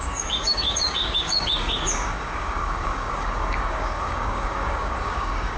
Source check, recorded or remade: remade